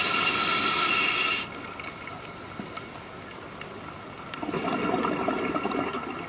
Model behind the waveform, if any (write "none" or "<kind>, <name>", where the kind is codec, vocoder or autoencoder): none